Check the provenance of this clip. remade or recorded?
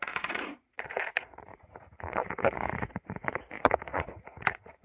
remade